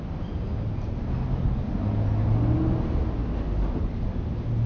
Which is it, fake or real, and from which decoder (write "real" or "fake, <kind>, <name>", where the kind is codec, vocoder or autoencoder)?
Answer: real